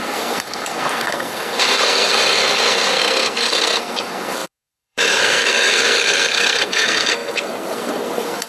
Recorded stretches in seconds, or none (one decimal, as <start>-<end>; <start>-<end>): none